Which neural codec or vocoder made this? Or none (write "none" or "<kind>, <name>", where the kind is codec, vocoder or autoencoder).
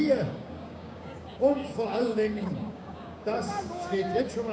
codec, DAC